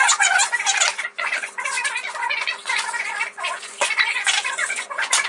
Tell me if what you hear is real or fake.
fake